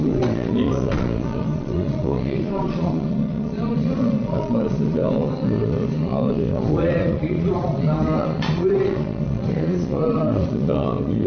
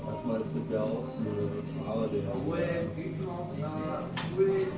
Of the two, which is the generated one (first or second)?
first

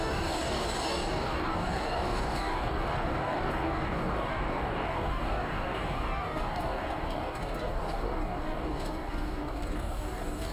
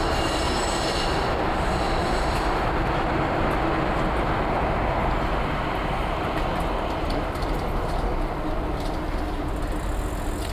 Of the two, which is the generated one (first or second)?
first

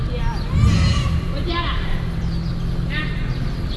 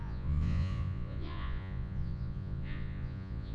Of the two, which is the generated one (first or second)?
second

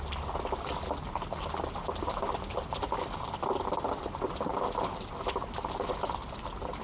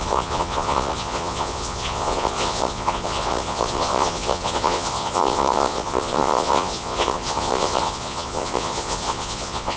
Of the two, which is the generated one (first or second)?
second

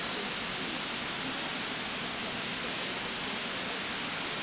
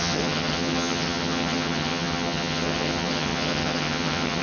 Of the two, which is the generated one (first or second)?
second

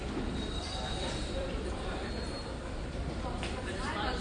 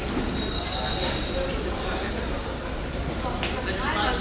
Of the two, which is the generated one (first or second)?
first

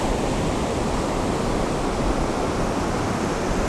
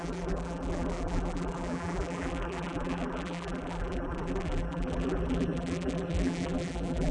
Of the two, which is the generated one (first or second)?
second